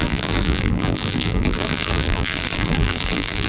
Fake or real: fake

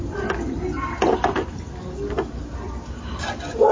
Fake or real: real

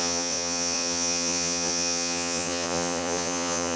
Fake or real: fake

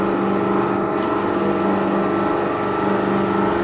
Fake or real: real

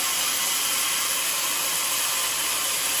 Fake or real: fake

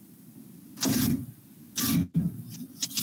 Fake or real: real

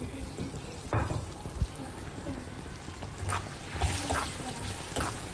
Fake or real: real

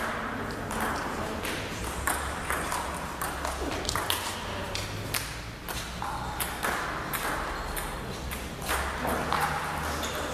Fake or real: real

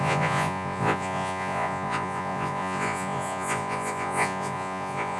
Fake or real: fake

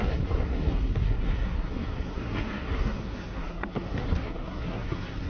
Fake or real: fake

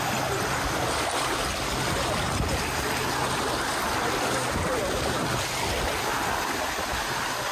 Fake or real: real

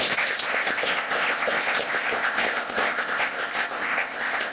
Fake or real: fake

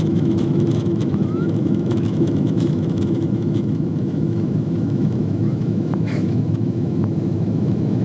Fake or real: fake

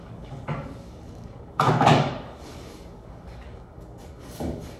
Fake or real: fake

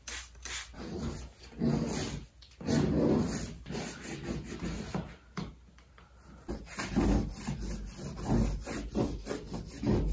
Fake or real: real